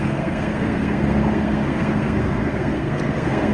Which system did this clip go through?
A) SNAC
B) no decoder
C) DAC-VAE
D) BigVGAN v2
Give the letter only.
A